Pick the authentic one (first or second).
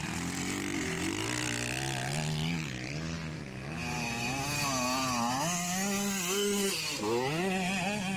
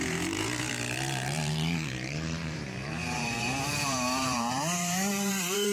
first